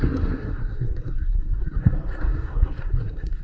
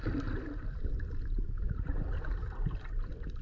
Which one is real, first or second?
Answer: second